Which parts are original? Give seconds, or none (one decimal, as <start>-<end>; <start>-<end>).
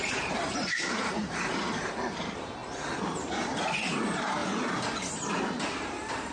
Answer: 2.6-3.1; 4.4-5.6